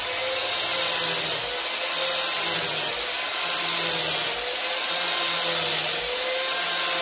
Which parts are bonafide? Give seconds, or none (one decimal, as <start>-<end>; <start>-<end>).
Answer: 0.0-7.0